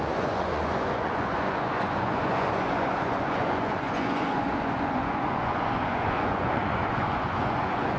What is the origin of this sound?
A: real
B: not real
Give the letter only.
B